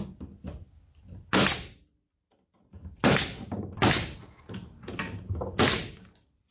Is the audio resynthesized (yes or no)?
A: no